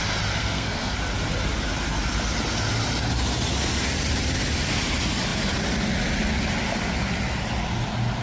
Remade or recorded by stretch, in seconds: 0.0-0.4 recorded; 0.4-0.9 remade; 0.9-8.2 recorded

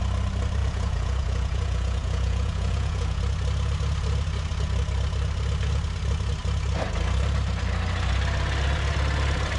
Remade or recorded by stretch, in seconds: 0.0-0.6 recorded; 0.6-3.2 remade; 3.2-9.6 recorded